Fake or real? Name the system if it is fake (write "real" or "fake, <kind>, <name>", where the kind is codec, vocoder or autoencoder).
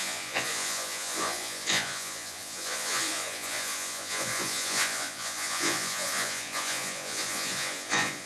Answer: fake, vocoder, Vocos